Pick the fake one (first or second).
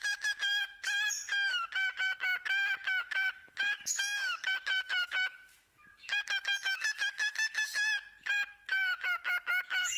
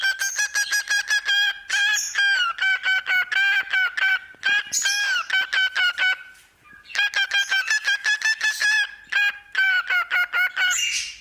first